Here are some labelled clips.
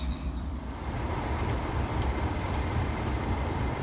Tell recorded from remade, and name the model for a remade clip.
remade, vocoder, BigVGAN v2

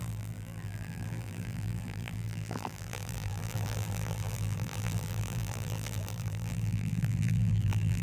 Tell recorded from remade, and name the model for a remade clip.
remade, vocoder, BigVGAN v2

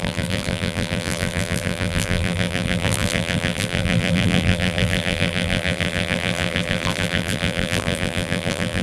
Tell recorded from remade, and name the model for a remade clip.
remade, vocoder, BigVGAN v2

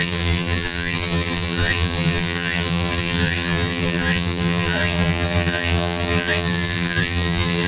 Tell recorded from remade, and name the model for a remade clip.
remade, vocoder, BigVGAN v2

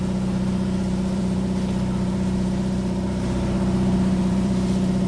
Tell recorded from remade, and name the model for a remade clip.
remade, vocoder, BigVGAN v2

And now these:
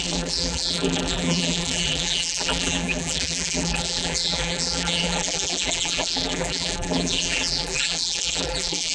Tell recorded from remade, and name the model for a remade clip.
remade, vocoder, BigVGAN v2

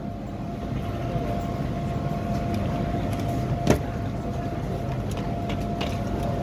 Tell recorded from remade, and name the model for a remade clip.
recorded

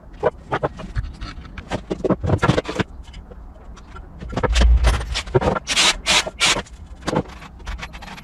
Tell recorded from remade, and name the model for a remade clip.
recorded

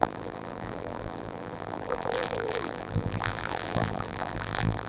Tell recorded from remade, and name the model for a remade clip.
remade, vocoder, BigVGAN v2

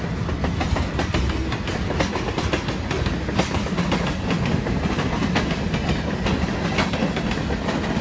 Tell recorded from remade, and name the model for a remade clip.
recorded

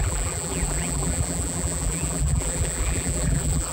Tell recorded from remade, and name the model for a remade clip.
remade, vocoder, BigVGAN v2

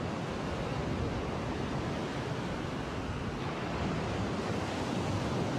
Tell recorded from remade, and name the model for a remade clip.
recorded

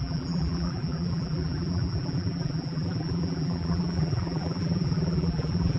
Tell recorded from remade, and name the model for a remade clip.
remade, vocoder, BigVGAN v2